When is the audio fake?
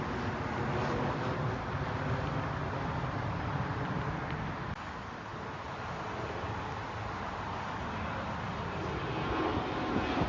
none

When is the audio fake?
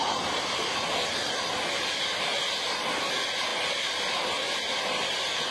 none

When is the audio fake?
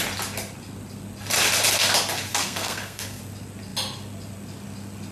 2.3-3.2 (codec, SNAC)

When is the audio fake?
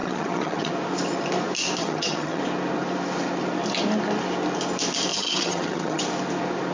0.0-0.7 (vocoder, HiFi-GAN); 1.8-2.4; 5.1-6.0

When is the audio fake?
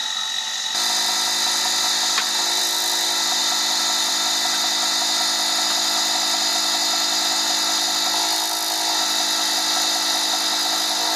none